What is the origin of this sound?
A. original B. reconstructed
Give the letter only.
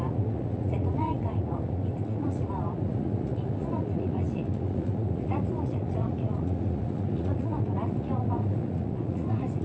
B